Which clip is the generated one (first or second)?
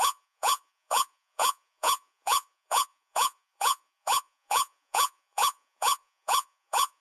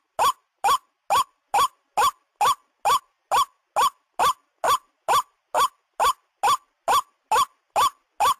first